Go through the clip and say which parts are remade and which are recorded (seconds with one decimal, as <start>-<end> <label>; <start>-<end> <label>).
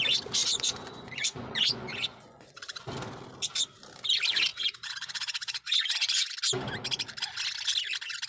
0.0-0.4 recorded; 0.4-2.9 remade; 2.9-4.5 recorded; 4.5-6.3 remade; 6.3-8.3 recorded